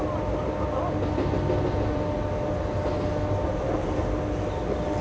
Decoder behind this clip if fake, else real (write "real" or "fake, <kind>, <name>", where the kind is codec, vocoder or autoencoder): real